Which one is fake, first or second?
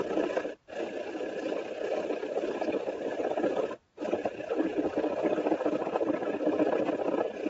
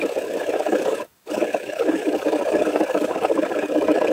second